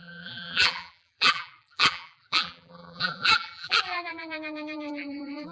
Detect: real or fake fake